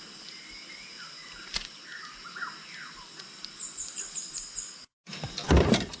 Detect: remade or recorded recorded